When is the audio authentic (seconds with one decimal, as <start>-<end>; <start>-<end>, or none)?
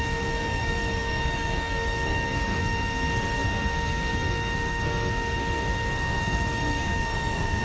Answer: none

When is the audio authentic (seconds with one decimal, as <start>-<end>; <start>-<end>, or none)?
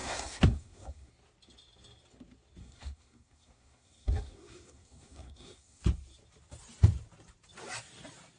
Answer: 1.1-2.6; 5.8-8.4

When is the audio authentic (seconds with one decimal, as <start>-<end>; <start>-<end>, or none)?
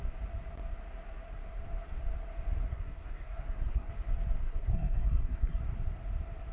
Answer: 0.0-2.7; 3.9-4.4; 5.6-6.5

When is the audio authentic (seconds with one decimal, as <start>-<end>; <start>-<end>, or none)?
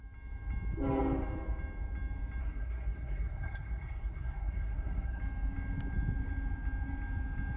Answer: 0.0-2.4; 5.2-7.6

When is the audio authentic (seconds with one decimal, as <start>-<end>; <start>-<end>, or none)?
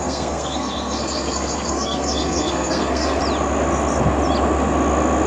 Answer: 3.2-5.3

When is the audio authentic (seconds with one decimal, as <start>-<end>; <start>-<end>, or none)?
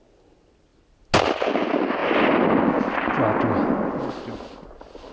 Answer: 0.0-5.1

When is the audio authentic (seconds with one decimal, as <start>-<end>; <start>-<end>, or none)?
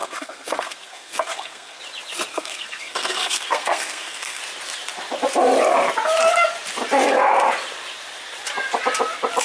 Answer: 1.8-2.3; 4.4-9.4